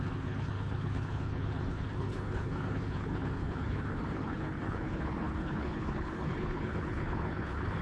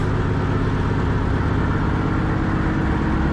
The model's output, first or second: first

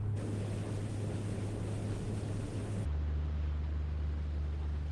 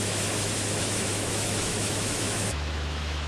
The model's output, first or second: second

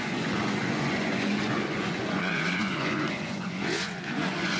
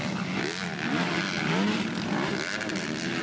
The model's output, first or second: first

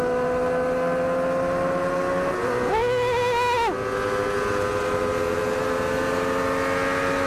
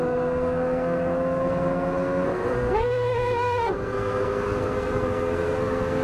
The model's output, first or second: second